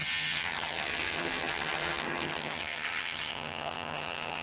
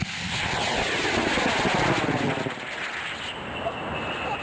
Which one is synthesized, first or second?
first